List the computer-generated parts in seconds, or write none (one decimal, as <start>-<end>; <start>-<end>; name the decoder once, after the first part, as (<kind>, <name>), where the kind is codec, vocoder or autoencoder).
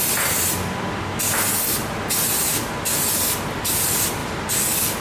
none